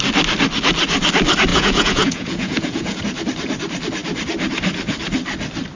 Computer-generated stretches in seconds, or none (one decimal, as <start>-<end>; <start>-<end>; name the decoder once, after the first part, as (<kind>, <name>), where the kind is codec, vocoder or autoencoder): 1.5-3.0 (vocoder, Vocos)